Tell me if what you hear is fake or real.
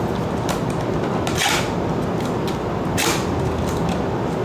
real